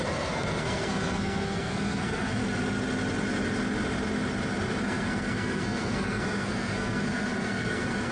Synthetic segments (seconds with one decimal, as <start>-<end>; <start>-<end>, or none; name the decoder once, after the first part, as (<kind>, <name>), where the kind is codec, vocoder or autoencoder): 0.0-2.4 (codec, SNAC); 4.8-8.1